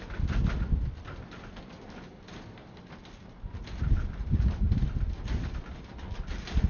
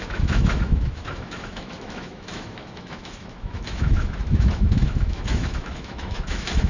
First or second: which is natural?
first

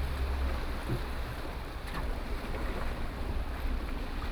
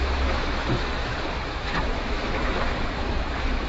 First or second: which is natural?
first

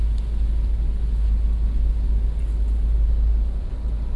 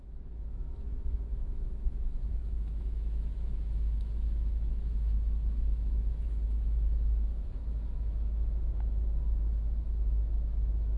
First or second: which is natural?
first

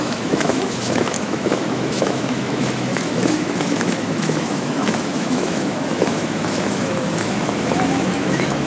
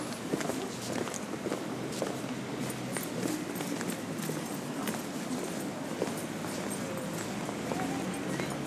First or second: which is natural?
second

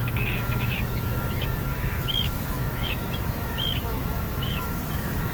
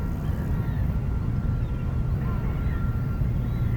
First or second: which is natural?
second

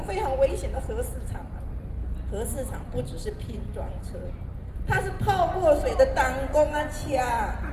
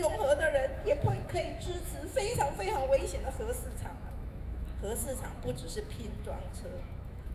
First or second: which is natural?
first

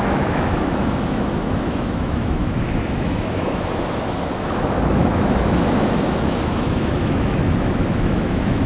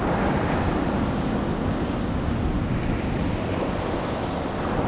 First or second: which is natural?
second